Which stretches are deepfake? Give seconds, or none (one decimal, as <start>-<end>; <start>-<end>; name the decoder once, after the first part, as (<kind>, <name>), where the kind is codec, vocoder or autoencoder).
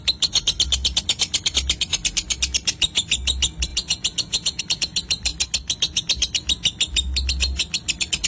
3.7-4.6 (vocoder, Vocos)